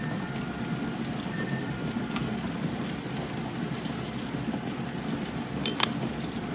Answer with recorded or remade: recorded